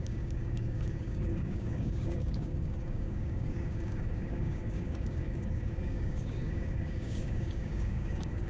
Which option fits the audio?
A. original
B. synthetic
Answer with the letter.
B